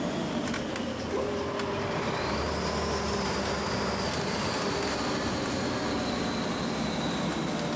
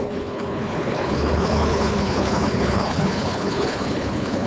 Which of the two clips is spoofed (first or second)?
second